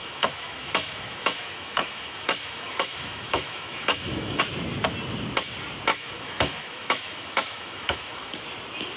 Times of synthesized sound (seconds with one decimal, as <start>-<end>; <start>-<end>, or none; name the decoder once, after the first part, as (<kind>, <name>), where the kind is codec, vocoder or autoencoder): 0.0-4.4 (autoencoder, DAC-VAE); 5.9-8.4